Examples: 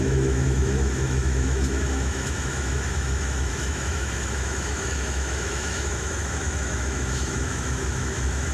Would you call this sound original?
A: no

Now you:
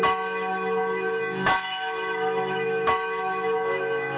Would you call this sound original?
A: no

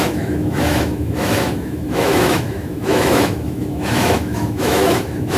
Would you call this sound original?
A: no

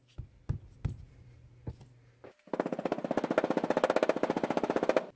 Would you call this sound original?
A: yes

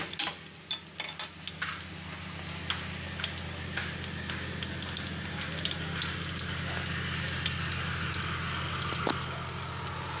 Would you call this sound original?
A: yes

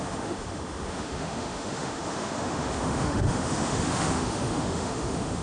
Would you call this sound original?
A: no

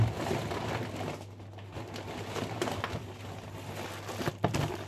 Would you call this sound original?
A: yes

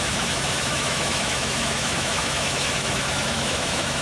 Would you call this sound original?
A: no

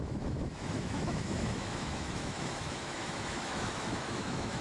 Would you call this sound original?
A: no